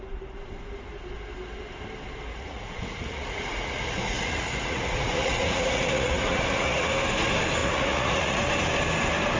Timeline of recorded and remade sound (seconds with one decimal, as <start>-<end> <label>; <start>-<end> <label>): 0.0-2.3 recorded; 2.3-6.9 remade; 6.9-7.6 recorded; 7.6-8.4 remade; 8.4-9.4 recorded